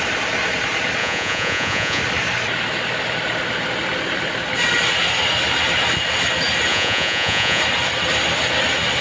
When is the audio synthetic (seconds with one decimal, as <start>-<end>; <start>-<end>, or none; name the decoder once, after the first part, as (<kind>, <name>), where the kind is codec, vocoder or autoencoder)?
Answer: 1.0-2.0 (vocoder, Vocos); 6.7-7.6